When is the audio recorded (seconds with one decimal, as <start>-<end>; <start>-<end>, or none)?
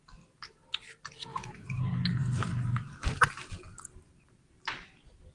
0.0-1.3; 1.8-5.3